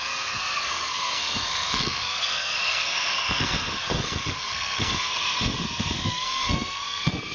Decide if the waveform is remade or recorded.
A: remade